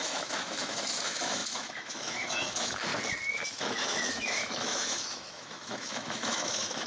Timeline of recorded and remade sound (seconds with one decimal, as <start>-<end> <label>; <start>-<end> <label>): 0.0-2.9 remade; 2.9-3.5 recorded; 3.5-6.9 remade